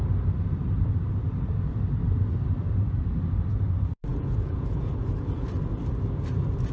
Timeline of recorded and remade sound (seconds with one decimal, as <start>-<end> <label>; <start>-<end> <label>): 0.0-4.1 recorded; 4.1-4.9 remade; 4.9-6.7 recorded